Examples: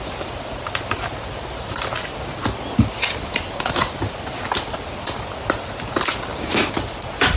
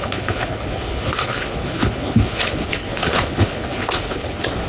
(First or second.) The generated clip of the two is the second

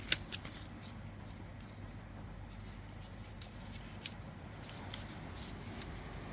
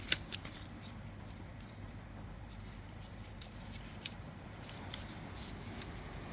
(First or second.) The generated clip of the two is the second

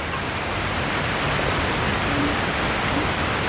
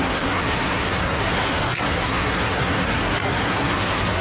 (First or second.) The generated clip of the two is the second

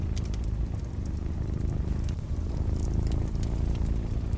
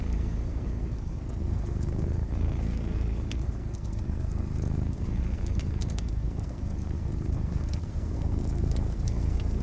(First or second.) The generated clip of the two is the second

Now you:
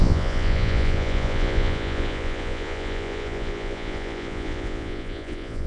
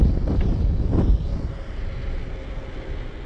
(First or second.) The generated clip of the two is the first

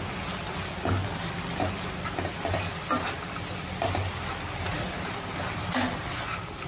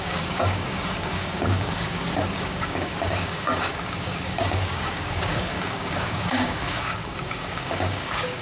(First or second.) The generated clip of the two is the second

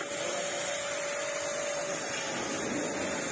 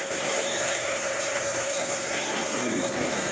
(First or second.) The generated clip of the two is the second